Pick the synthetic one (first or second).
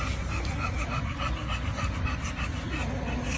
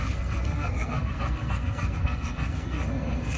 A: second